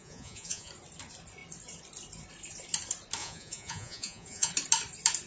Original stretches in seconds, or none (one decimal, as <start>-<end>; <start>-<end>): 0.7-3.2; 4.5-5.3